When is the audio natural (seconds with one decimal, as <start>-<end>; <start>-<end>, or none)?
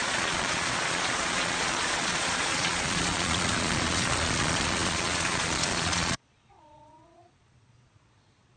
none